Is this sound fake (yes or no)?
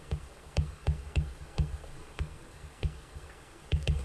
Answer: yes